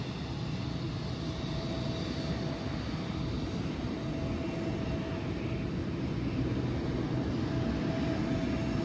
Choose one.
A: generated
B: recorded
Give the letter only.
B